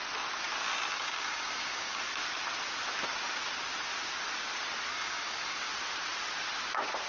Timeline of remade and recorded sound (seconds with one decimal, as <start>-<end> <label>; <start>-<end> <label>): 0.0-0.9 recorded; 0.9-2.0 remade; 2.0-4.9 recorded; 4.9-5.7 remade; 5.7-7.1 recorded